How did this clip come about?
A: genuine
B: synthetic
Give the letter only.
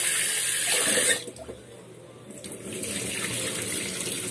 A